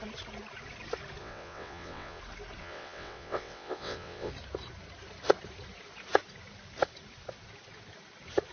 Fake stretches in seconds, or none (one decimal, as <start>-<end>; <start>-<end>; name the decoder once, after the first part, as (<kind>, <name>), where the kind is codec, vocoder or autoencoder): 1.2-2.2 (vocoder, WaveNeXt); 2.6-4.3